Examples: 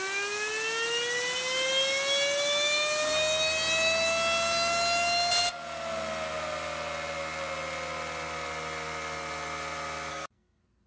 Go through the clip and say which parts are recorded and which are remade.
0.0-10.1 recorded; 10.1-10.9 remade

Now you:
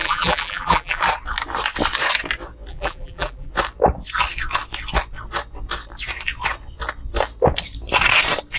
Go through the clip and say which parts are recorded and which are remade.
0.0-1.0 remade; 1.0-2.7 recorded; 2.7-3.5 remade; 3.5-8.6 recorded

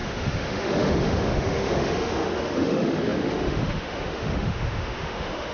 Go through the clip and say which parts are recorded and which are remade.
0.0-5.5 remade

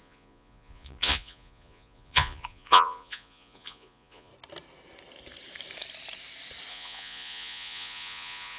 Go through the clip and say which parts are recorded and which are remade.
0.0-4.3 remade; 4.3-6.7 recorded; 6.7-8.6 remade

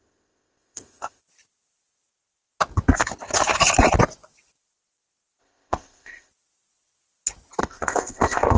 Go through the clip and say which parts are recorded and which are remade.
0.0-1.2 remade; 1.2-5.4 recorded; 5.4-6.3 remade; 6.3-7.6 recorded; 7.6-8.6 remade

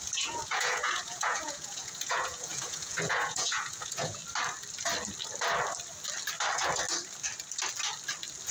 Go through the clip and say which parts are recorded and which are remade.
0.0-4.2 remade; 4.2-8.5 recorded